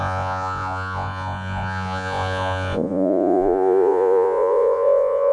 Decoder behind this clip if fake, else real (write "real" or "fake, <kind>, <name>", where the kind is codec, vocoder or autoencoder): fake, vocoder, Vocos